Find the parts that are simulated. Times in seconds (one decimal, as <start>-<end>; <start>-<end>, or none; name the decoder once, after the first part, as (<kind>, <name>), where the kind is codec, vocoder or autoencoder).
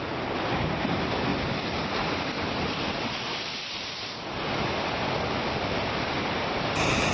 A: 0.0-1.3 (vocoder, BigVGAN v2); 5.6-7.1